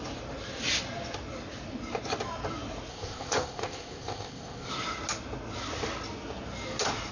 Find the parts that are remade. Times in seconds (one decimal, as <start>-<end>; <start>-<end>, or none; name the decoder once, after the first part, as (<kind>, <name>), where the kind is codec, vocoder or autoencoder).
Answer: 2.9-4.7 (codec, ZipCodec)